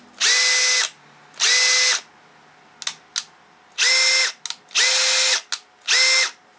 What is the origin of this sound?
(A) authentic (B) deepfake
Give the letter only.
A